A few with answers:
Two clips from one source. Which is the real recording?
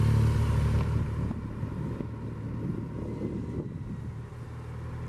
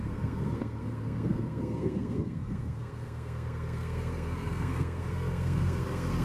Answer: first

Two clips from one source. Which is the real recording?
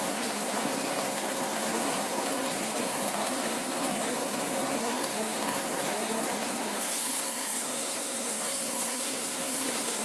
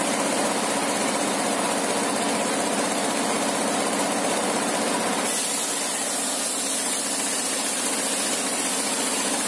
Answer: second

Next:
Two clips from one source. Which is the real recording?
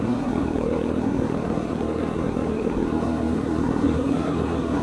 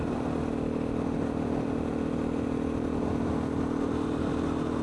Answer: second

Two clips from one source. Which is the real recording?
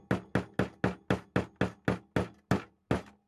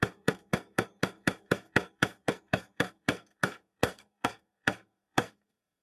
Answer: first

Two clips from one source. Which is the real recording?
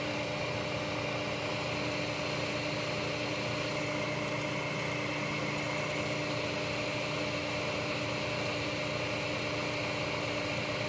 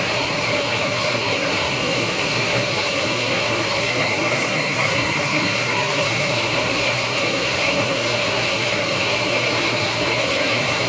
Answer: first